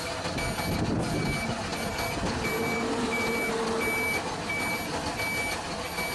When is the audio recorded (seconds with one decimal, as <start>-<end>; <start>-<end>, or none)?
0.0-6.1